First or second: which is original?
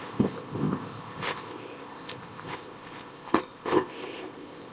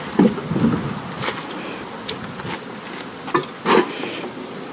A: second